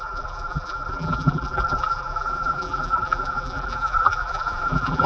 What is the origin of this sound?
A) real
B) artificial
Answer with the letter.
B